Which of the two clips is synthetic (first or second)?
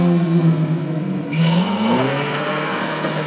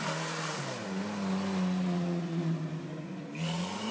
first